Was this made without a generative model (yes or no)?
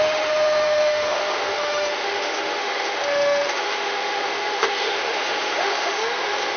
no